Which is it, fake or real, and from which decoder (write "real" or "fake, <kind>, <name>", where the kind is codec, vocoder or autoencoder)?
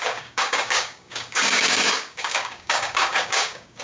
fake, codec, DAC